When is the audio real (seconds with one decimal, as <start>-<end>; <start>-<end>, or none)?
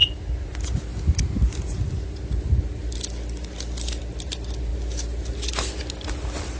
0.0-6.6